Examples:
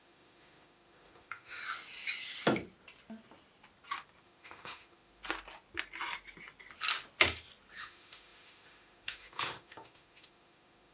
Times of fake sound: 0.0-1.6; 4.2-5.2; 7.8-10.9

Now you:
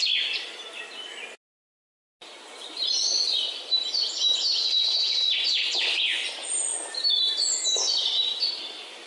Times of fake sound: none

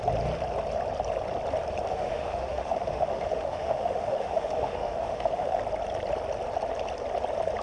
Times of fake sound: 1.9-5.6